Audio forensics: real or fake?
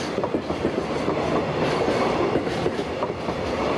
real